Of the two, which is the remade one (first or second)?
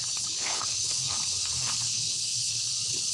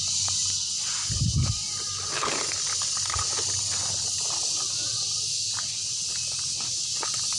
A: first